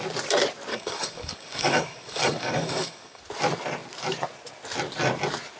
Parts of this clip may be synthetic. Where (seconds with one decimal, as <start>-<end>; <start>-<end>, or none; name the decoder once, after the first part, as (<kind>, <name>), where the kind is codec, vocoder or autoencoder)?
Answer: 0.7-3.2 (codec, DAC)